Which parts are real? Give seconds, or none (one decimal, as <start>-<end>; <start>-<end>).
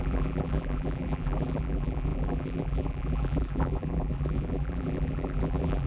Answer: none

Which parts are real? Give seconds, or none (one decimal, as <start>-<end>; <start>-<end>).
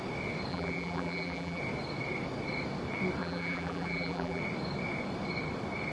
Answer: 0.0-0.5; 1.6-3.2; 4.4-5.9